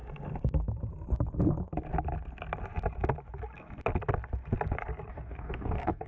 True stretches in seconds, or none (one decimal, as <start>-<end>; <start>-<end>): 0.0-5.1